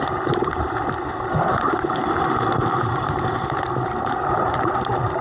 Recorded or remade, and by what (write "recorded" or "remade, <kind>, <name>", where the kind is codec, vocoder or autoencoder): recorded